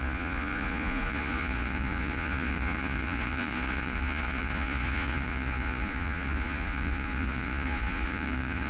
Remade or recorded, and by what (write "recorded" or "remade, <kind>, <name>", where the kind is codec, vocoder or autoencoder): remade, vocoder, Vocos